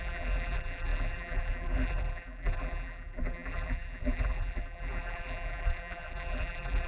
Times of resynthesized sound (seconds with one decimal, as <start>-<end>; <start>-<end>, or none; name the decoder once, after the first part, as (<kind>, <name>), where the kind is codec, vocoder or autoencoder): 0.0-6.9 (vocoder, BigVGAN v2)